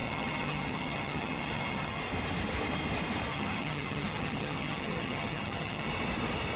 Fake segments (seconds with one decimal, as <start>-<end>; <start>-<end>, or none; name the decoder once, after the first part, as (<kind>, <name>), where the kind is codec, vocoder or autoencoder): 0.0-2.0 (vocoder, HiFi-GAN); 3.3-5.9